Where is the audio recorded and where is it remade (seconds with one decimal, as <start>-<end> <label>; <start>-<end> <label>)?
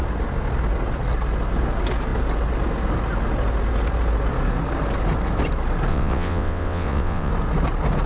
0.0-5.9 recorded; 5.9-7.3 remade; 7.3-8.1 recorded